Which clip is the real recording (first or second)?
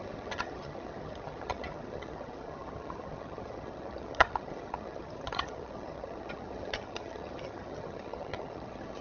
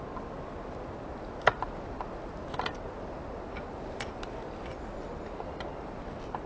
second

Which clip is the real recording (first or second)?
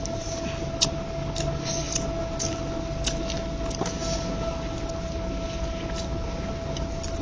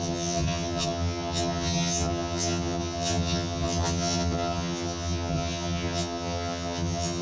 first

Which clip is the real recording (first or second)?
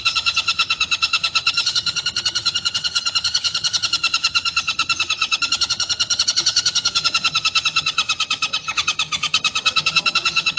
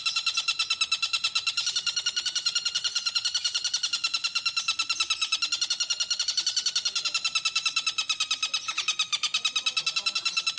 second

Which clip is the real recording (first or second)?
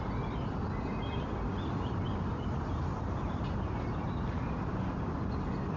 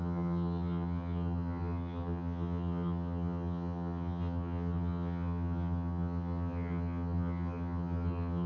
first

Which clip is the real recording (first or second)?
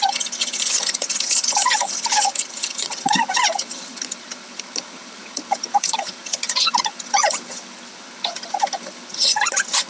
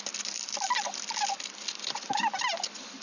second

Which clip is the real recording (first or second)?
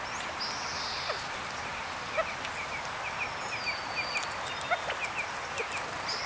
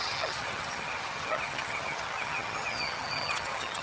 first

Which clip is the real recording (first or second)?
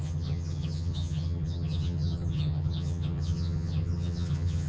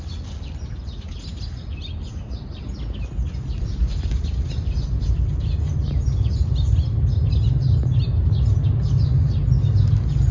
second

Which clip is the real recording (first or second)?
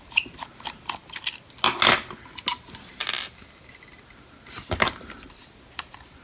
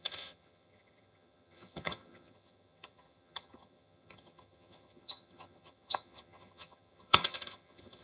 first